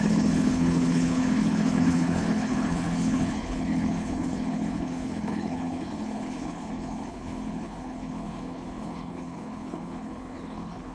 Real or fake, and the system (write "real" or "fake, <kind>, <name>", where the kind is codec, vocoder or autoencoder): fake, codec, HILCodec